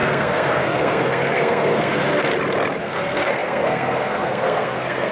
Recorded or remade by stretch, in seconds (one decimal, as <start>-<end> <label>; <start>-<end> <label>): 0.0-2.3 remade; 2.3-2.8 recorded; 2.8-5.1 remade